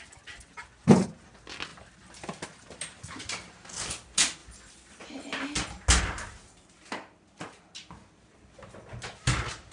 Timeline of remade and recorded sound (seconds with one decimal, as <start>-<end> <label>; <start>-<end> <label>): 0.0-9.7 recorded

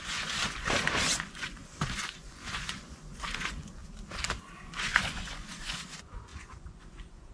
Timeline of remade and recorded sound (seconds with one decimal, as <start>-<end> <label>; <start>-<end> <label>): 0.0-3.8 remade; 3.8-4.4 recorded; 4.4-7.3 remade